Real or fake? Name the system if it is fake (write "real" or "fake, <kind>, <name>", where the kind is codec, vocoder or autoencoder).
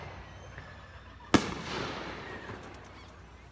real